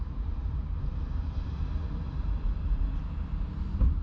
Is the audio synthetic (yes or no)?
yes